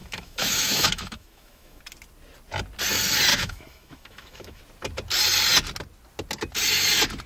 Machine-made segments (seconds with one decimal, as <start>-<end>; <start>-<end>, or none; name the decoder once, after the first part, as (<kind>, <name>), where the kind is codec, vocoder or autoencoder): 0.0-1.8 (autoencoder, DAC-VAE); 3.3-4.6